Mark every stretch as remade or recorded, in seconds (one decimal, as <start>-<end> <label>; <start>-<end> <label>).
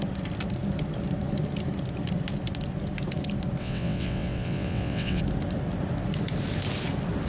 0.0-3.6 recorded; 3.6-5.2 remade; 5.2-7.3 recorded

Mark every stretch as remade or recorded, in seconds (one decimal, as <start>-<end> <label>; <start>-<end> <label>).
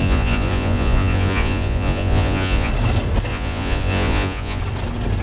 0.0-2.7 remade; 2.7-3.3 recorded; 3.3-4.6 remade; 4.6-5.2 recorded